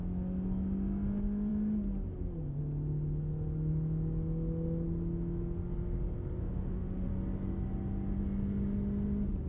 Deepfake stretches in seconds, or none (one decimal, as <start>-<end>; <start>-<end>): 6.4-7.1